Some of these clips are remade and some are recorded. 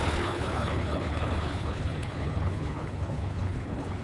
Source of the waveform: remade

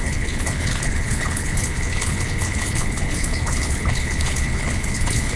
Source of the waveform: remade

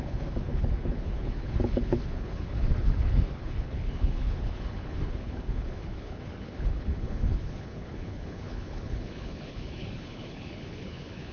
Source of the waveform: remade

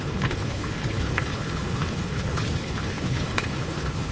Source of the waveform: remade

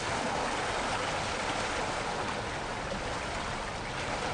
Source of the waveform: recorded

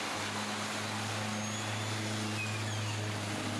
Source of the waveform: recorded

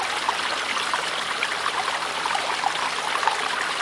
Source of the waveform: recorded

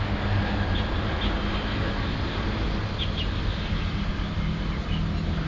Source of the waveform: recorded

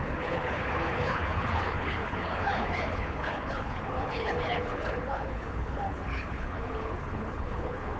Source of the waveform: remade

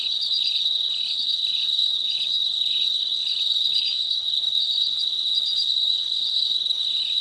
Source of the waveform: remade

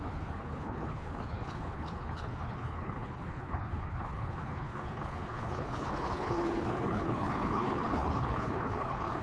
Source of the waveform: remade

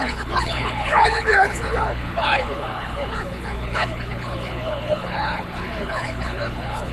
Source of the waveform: remade